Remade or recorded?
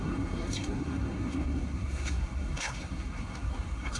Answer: remade